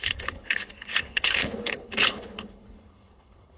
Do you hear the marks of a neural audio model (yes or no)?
yes